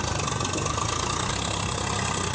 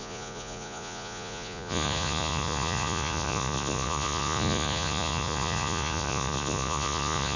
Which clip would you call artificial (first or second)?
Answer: second